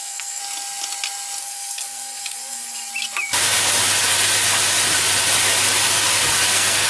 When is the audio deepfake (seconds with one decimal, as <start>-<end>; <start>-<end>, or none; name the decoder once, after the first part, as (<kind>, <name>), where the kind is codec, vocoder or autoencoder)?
0.0-0.4 (codec, SNAC); 1.4-2.9; 6.5-6.9